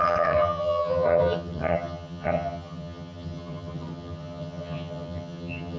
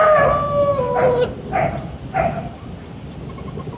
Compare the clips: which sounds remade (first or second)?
first